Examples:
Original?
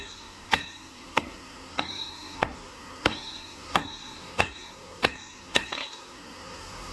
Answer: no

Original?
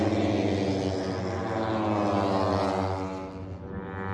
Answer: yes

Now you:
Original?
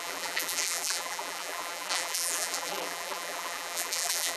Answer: no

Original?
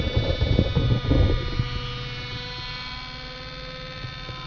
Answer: yes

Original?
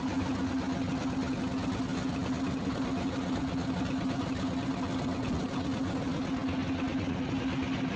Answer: yes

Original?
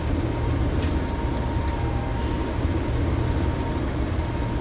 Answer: yes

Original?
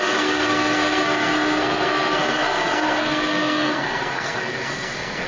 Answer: no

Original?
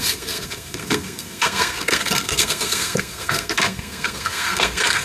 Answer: no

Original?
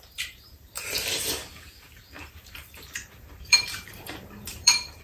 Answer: no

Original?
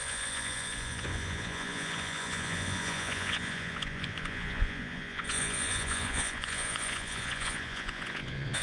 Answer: no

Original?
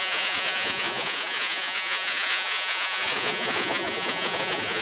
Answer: no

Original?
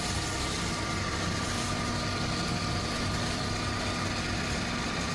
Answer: yes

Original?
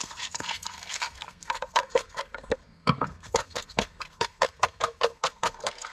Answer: no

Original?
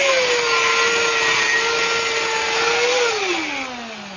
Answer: yes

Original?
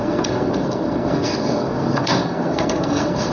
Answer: no